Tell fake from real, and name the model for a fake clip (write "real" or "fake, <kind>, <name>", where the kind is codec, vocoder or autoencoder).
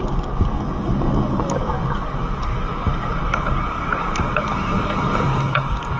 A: fake, codec, DAC